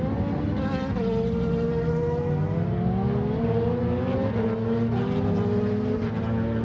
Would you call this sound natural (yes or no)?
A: yes